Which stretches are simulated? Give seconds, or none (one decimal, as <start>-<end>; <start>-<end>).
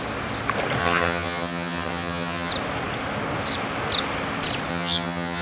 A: 0.8-2.5; 4.7-5.4